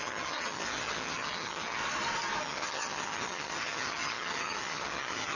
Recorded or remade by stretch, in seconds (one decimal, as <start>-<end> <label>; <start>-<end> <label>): 0.0-1.8 remade; 1.8-2.4 recorded; 2.4-5.3 remade